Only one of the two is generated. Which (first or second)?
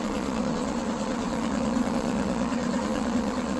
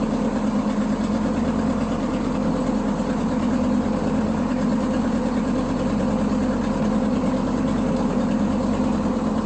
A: first